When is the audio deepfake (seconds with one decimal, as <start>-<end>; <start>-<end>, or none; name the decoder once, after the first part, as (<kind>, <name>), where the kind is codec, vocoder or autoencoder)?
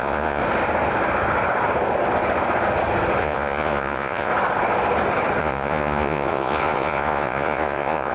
0.0-0.4 (vocoder, Vocos); 3.2-4.3; 5.4-8.1